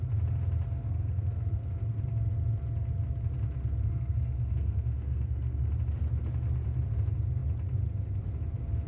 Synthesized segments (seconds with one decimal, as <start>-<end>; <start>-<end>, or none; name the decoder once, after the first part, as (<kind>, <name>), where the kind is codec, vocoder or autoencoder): 0.8-1.7 (codec, SNAC); 3.8-5.7